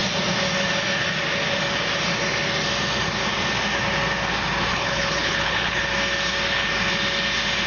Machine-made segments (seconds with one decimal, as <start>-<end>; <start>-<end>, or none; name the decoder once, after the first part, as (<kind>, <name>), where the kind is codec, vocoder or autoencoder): 4.7-5.8 (codec, HILCodec)